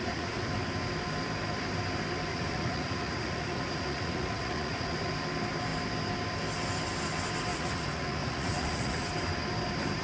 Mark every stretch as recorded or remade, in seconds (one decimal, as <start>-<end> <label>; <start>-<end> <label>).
0.0-0.5 remade; 0.5-2.3 recorded; 2.3-5.1 remade; 5.1-7.5 recorded; 7.5-9.1 remade; 9.1-10.0 recorded